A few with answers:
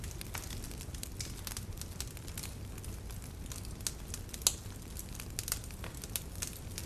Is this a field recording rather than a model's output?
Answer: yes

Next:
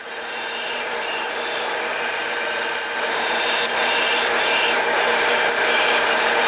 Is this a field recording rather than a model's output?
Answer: no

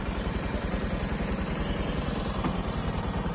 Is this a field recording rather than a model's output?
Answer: no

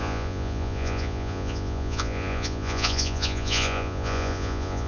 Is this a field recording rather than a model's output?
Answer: no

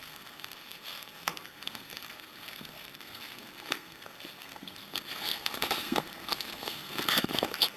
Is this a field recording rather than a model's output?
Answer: no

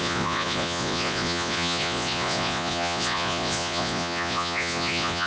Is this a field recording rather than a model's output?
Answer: no